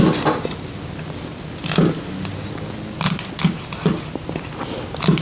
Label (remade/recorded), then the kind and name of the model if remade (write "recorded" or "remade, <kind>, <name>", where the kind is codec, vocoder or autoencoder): recorded